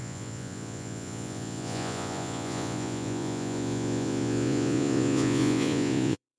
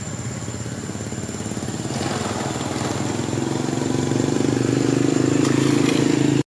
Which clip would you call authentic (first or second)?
second